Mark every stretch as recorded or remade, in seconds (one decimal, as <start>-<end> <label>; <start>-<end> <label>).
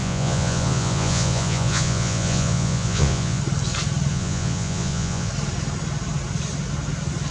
0.0-3.4 remade; 3.4-4.1 recorded; 4.1-5.3 remade; 5.3-7.3 recorded